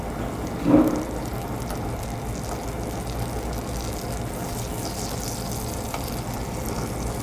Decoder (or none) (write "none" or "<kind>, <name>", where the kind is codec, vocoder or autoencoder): none